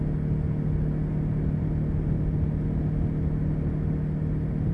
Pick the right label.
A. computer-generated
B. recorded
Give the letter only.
B